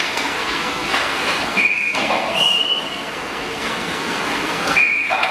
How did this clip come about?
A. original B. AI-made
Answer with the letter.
B